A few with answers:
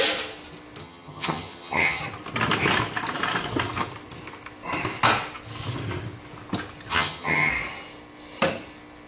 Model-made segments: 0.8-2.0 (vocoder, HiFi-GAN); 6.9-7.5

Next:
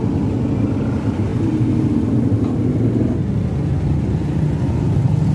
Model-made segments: none

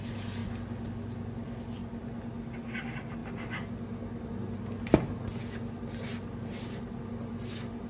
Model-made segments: none

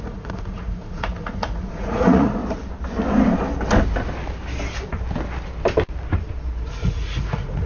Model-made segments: 0.0-2.4 (vocoder, Vocos); 6.7-7.7

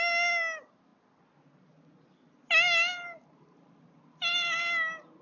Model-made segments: none

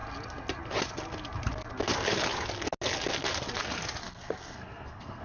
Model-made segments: 4.0-5.2 (codec, SNAC)

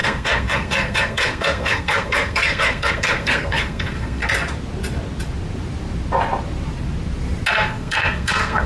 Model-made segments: 0.0-4.2 (codec, SNAC); 7.5-8.7